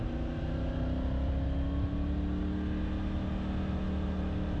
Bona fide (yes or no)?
yes